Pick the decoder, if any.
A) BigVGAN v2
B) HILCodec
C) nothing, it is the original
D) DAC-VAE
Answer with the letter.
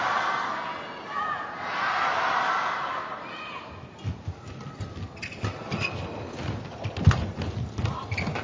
C